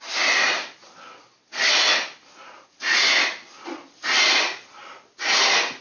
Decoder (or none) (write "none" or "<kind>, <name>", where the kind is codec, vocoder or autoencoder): none